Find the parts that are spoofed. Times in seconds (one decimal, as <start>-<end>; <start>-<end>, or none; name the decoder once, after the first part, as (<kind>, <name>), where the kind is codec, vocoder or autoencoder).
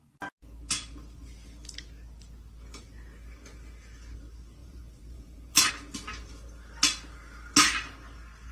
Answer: 4.6-5.7 (vocoder, BigVGAN v2)